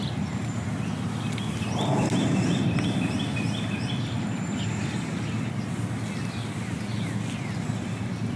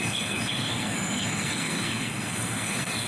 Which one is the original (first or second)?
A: first